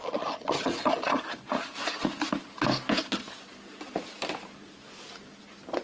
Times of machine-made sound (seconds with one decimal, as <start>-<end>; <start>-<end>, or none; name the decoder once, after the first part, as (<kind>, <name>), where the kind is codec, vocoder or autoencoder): 0.0-1.2 (vocoder, HiFi-GAN)